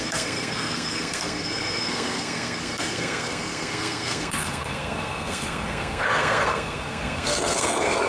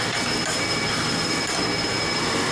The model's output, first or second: first